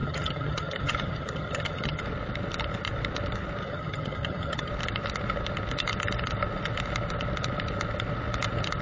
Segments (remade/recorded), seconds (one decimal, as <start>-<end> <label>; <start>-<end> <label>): 0.0-2.0 remade; 2.0-3.6 recorded; 3.6-4.7 remade; 4.7-8.8 recorded